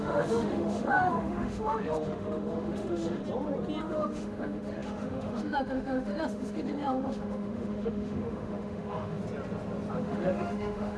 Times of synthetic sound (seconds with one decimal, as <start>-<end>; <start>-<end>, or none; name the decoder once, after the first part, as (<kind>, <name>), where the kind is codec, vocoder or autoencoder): 0.0-3.2 (autoencoder, DAC-VAE); 3.8-9.2; 10.0-11.0